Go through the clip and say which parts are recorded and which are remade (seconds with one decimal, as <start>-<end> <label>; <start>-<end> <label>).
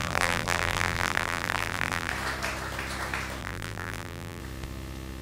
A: 0.0-2.1 remade; 2.1-3.4 recorded; 3.4-4.4 remade; 4.4-5.2 recorded